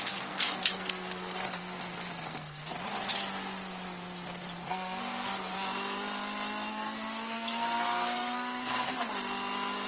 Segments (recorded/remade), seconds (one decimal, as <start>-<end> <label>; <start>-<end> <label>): 0.0-2.6 remade; 2.6-4.7 recorded; 4.7-5.5 remade; 5.5-6.7 recorded; 6.7-9.1 remade; 9.1-9.9 recorded